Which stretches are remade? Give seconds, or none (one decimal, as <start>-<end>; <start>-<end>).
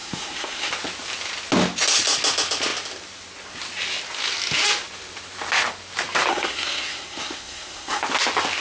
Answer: 0.0-0.7; 6.3-8.0